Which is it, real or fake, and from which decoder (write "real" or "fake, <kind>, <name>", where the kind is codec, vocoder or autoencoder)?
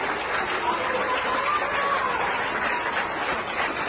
real